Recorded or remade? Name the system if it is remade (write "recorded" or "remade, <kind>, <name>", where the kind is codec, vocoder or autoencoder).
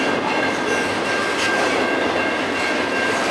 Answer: recorded